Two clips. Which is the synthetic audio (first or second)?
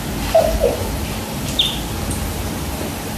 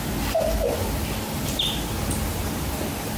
first